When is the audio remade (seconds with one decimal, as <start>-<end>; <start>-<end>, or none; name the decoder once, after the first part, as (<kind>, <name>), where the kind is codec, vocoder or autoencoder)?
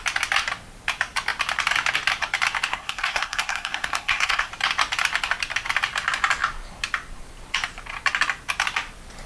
2.7-4.5 (codec, SNAC)